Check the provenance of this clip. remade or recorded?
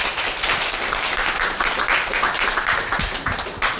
recorded